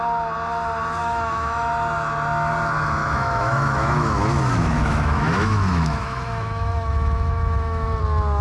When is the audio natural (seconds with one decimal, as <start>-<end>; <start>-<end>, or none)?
0.0-1.0; 1.7-3.0; 8.0-8.4